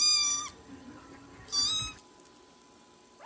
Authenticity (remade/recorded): recorded